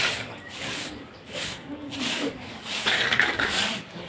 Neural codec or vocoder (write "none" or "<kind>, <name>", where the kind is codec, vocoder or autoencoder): codec, DAC